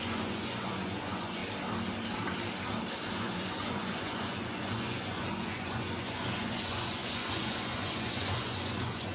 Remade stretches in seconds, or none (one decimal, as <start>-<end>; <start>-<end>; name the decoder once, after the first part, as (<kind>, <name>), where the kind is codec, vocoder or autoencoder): 0.0-1.4 (vocoder, Vocos); 3.1-9.1

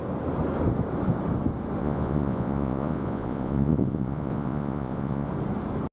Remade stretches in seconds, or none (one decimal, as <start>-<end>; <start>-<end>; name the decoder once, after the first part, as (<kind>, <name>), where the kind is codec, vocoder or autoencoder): 1.8-5.3 (vocoder, Vocos)

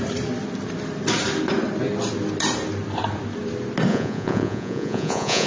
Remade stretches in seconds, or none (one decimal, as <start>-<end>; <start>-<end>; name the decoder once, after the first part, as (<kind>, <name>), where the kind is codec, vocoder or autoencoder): 3.9-5.5 (vocoder, Vocos)

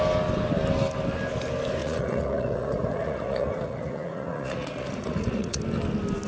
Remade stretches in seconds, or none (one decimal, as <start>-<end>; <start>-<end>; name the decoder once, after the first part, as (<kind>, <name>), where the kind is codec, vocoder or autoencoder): 1.8-5.6 (vocoder, Vocos)

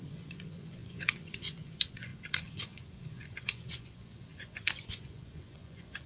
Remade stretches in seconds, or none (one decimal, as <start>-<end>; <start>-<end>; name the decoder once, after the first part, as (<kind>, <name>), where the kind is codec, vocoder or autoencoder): 0.0-6.1 (vocoder, Vocos)